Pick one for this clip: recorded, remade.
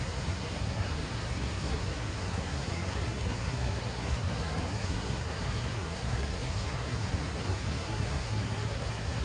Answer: remade